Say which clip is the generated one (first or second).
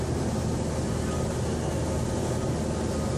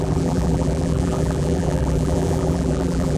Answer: second